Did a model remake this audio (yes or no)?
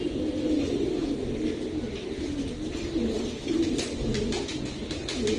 no